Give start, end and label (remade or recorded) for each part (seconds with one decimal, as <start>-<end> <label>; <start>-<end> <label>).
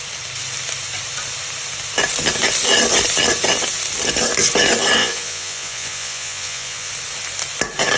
0.0-5.0 recorded; 5.0-6.9 remade; 6.9-8.0 recorded